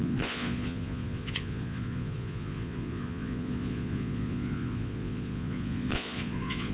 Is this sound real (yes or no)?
no